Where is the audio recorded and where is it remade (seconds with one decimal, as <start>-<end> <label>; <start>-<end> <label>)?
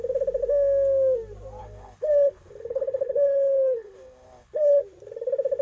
0.0-1.6 recorded; 1.6-4.8 remade; 4.8-5.6 recorded